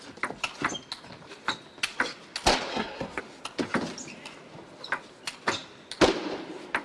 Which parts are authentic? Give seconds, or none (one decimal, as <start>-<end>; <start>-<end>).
0.0-2.7; 3.2-6.8